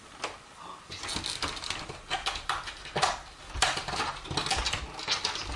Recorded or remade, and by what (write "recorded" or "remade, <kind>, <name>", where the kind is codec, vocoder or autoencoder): recorded